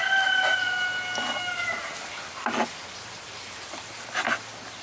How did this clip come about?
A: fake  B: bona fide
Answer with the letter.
B